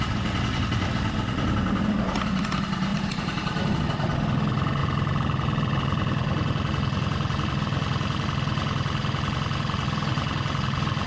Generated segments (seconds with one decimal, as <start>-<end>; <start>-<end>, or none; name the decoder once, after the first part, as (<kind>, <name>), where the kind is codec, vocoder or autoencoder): 2.9-3.8 (vocoder, BigVGAN v2)